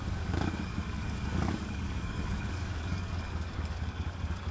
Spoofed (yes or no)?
yes